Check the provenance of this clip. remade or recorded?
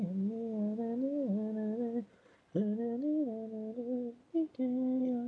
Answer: recorded